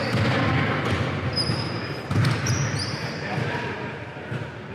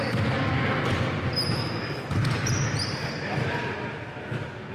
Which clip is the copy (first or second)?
first